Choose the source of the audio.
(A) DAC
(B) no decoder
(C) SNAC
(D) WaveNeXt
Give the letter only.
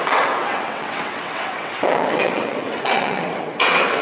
D